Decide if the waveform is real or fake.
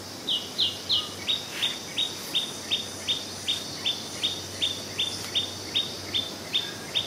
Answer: real